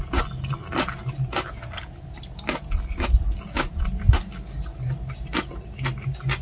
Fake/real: real